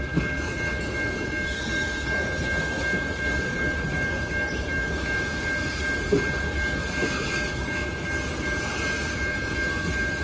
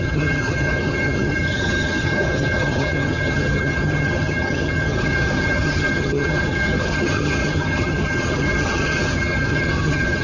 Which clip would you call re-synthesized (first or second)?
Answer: second